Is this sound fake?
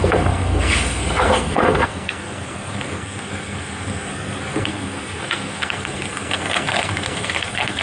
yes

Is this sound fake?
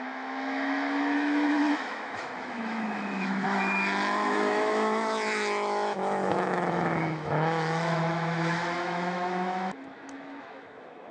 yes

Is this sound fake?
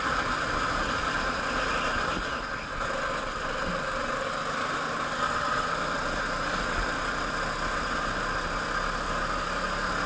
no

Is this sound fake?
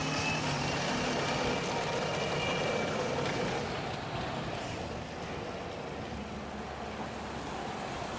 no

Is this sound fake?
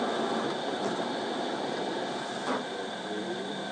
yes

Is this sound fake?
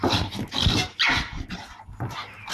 no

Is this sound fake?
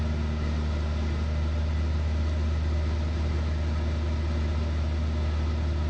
no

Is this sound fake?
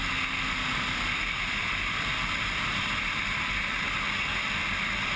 no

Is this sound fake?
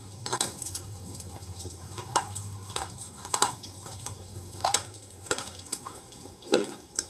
yes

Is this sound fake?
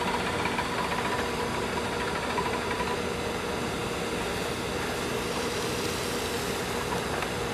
no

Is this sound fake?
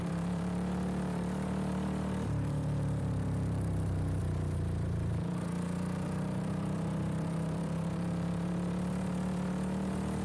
yes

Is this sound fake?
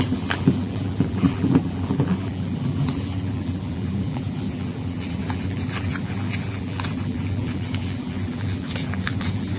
yes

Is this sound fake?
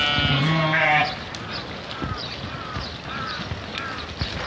no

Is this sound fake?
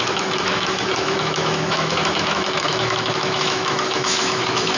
yes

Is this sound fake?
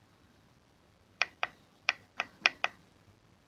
yes